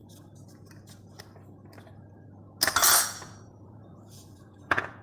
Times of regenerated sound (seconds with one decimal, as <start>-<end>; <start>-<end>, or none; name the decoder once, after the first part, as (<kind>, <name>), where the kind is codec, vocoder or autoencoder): 3.0-5.0 (vocoder, Vocos)